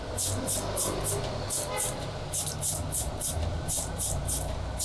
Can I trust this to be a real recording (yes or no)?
yes